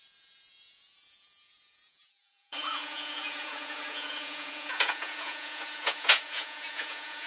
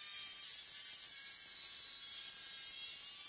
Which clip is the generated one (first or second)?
first